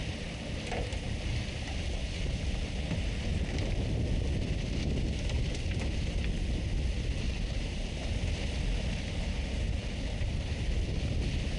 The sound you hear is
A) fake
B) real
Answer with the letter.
B